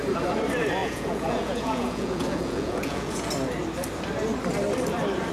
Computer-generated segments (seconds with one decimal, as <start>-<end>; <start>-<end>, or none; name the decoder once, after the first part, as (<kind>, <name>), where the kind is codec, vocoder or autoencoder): 0.8-3.3 (vocoder, Vocos)